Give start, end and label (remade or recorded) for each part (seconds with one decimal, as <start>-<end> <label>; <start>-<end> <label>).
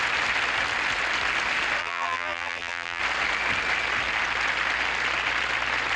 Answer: 0.0-1.8 recorded; 1.8-3.0 remade; 3.0-6.0 recorded